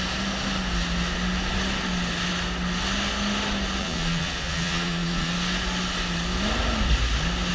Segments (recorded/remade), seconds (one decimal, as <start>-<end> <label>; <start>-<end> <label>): 0.0-3.8 recorded; 3.8-5.3 remade; 5.3-7.5 recorded